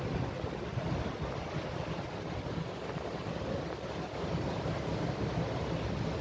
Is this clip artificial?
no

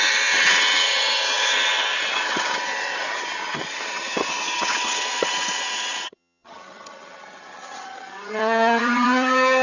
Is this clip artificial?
yes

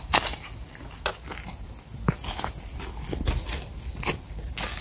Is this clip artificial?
no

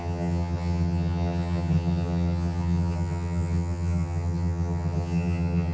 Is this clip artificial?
yes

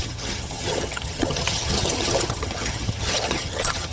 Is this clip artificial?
yes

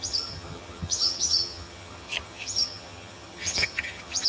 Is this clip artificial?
yes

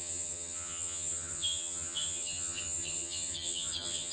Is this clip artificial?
yes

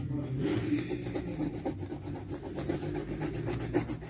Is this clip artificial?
no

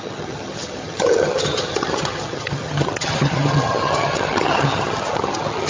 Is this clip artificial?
yes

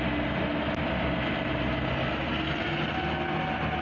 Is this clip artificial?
no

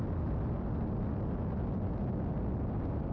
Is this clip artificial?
no